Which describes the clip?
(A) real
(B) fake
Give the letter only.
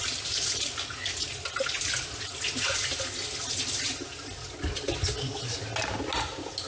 A